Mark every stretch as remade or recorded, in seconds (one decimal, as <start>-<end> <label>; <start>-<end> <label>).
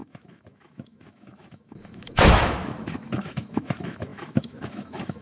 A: 0.0-5.2 remade